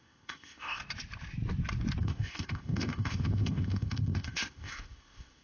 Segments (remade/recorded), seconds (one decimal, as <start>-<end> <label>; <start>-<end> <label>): 0.0-0.8 remade; 0.8-2.0 recorded; 2.0-5.4 remade